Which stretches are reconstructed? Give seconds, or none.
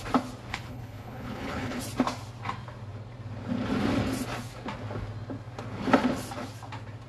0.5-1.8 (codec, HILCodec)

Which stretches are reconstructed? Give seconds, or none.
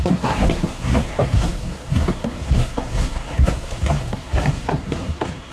0.0-5.5 (codec, SNAC)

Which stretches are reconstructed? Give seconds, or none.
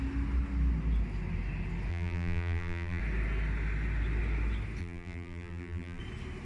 1.9-3.0 (vocoder, BigVGAN v2); 4.8-6.0